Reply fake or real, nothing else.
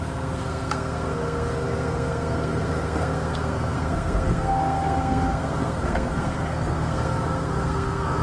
fake